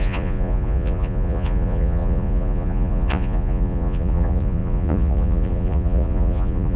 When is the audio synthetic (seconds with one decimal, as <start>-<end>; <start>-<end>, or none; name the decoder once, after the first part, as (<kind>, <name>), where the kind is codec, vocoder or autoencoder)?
0.0-6.8 (vocoder, Vocos)